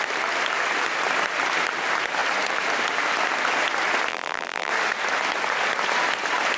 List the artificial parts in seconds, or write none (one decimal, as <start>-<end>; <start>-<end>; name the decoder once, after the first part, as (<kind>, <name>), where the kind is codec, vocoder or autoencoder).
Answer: 4.1-4.7 (vocoder, BigVGAN v2)